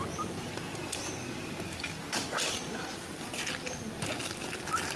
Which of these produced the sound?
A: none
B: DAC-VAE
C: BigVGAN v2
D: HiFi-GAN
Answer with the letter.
A